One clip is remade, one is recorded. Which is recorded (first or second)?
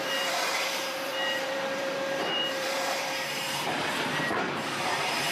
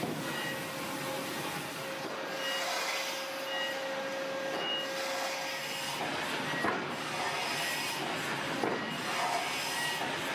second